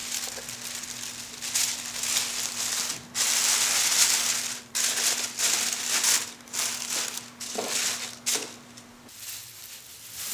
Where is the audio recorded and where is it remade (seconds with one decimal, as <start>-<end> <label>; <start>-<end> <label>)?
0.0-10.3 recorded

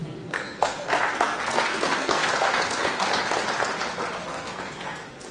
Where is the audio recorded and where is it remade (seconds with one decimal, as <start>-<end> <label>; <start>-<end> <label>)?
0.0-3.2 remade; 3.2-4.3 recorded; 4.3-5.3 remade

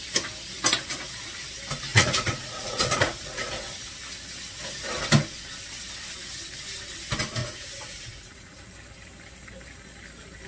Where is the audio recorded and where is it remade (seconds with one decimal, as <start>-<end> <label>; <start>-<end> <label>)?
0.0-1.9 recorded; 1.9-3.5 remade; 3.5-7.4 recorded; 7.4-8.6 remade; 8.6-10.5 recorded

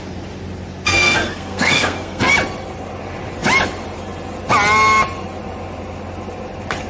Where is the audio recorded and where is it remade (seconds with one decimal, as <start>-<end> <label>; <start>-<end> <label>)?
0.0-0.9 recorded; 0.9-2.3 remade; 2.3-6.9 recorded

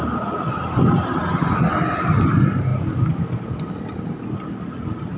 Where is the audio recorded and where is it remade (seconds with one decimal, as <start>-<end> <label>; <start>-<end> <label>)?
0.0-5.2 recorded